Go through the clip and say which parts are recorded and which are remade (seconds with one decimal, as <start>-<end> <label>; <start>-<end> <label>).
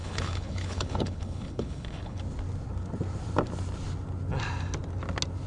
0.0-2.2 remade; 2.2-5.5 recorded